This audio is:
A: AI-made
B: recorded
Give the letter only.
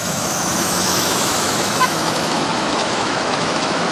A